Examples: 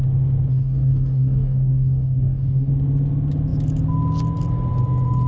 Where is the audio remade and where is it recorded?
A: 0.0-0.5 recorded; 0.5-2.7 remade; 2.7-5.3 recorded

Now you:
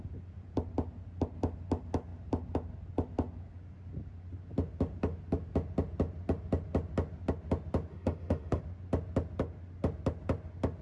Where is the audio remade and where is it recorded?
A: 0.0-7.9 recorded; 7.9-8.6 remade; 8.6-10.8 recorded

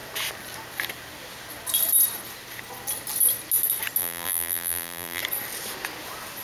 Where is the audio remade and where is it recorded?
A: 0.0-4.0 recorded; 4.0-5.2 remade; 5.2-6.4 recorded

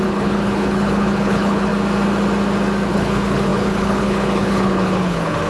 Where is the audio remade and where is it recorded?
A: 0.0-1.7 remade; 1.7-2.9 recorded; 2.9-5.5 remade

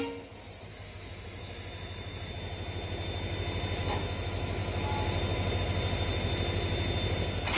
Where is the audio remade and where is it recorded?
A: 0.0-0.7 recorded; 0.7-2.3 remade; 2.3-7.6 recorded

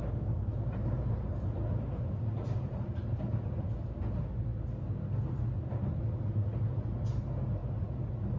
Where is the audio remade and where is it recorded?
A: 0.0-8.4 recorded